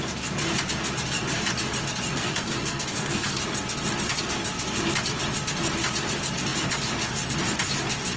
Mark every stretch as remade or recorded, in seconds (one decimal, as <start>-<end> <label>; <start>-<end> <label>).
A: 0.0-2.2 recorded; 2.2-3.4 remade; 3.4-8.2 recorded